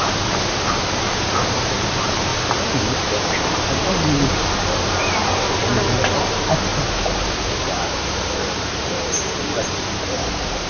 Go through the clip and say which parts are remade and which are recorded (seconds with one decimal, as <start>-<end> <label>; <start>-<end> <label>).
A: 0.0-5.6 remade; 5.6-6.3 recorded; 6.3-6.7 remade; 6.7-7.4 recorded; 7.4-10.7 remade